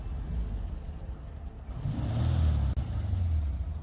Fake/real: real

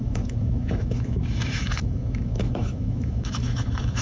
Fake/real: fake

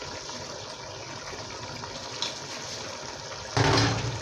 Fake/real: real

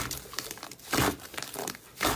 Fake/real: real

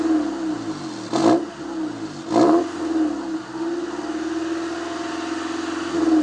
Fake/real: real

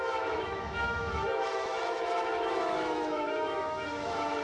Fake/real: fake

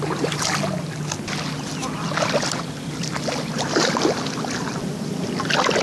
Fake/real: real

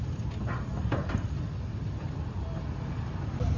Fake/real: real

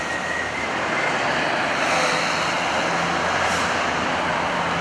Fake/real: real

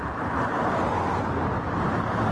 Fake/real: real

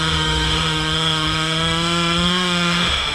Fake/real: fake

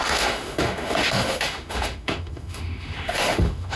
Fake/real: fake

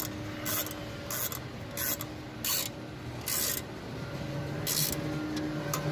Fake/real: real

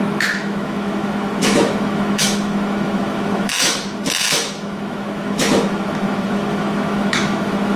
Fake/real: fake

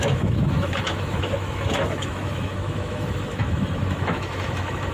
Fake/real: fake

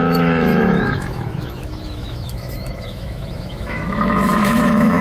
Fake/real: fake